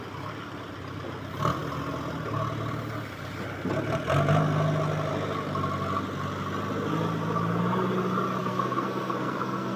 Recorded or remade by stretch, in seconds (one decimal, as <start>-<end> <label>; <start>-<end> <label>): 0.0-8.4 recorded; 8.4-9.8 remade